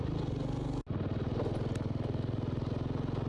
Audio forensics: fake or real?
real